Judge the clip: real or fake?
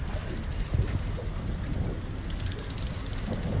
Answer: real